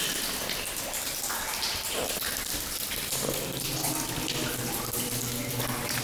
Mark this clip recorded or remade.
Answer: recorded